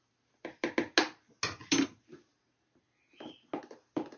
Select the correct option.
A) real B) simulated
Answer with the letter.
A